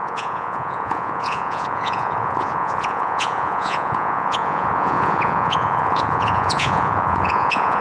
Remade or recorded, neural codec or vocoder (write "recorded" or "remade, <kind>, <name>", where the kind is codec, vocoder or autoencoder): remade, vocoder, Vocos